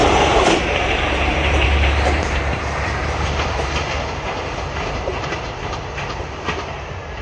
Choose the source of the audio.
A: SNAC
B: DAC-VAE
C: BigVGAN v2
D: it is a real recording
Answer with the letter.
C